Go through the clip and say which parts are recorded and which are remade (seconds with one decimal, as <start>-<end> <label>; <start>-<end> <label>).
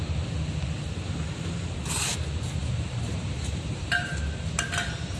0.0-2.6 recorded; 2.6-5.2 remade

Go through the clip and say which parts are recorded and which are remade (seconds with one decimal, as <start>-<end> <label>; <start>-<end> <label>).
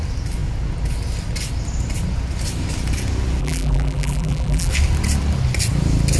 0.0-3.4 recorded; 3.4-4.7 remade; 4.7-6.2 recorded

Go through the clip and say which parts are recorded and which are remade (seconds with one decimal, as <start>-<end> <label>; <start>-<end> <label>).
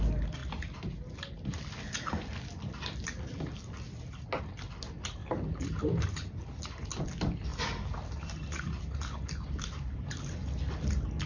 0.0-5.2 recorded; 5.2-6.4 remade; 6.4-7.5 recorded; 7.5-10.6 remade; 10.6-11.3 recorded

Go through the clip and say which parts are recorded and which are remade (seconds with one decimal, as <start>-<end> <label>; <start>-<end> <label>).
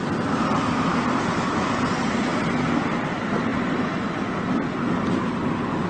0.0-5.9 remade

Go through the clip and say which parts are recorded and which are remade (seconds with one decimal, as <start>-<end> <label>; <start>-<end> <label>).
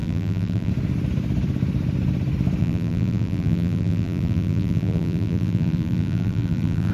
0.0-0.7 remade; 0.7-2.6 recorded; 2.6-6.9 remade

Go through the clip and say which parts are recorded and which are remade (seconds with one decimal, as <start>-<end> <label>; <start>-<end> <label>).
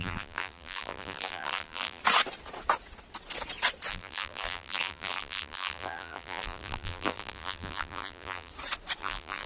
0.0-2.0 remade; 2.0-3.9 recorded; 3.9-8.5 remade; 8.5-9.0 recorded; 9.0-9.5 remade